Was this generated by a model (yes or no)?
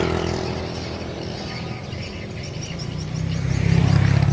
no